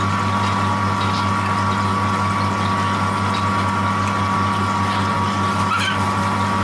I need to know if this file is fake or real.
real